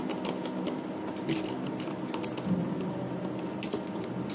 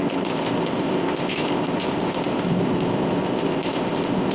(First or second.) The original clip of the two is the first